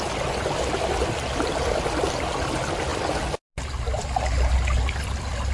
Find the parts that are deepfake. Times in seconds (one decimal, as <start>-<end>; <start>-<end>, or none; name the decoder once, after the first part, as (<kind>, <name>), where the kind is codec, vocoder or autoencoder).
none